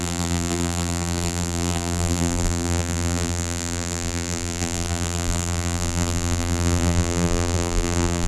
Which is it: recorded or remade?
remade